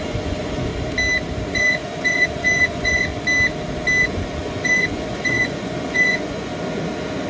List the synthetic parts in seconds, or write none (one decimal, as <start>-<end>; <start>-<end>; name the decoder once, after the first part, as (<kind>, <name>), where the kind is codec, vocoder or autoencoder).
0.0-0.7 (vocoder, Vocos); 1.5-3.1; 4.0-6.5